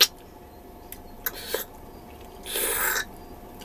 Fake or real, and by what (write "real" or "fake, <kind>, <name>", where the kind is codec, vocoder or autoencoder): real